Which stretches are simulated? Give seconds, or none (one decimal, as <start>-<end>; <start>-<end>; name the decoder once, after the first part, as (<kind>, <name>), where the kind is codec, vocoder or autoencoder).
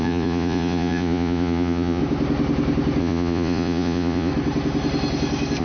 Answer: 0.0-2.0 (vocoder, Vocos); 3.0-4.3